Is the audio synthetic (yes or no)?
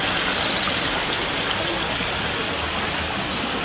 no